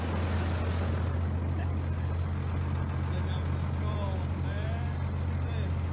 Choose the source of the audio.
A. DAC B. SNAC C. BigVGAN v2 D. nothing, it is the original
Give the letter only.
D